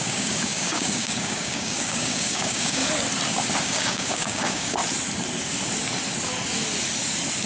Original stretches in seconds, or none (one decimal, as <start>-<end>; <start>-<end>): 2.8-3.6; 4.8-7.5